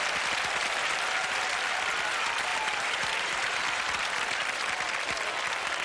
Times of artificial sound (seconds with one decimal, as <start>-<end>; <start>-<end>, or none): 0.6-1.3; 2.5-3.6